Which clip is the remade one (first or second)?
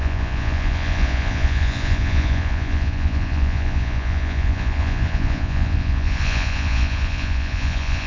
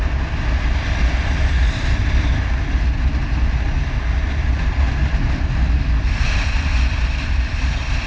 first